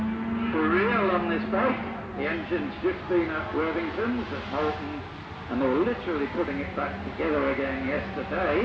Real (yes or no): yes